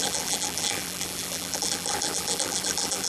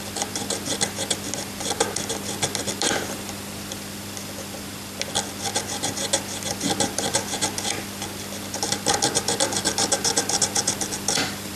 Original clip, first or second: second